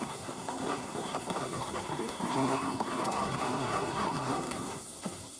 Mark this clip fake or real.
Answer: fake